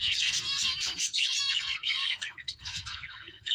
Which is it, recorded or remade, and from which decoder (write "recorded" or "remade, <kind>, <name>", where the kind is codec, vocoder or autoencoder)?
remade, codec, SNAC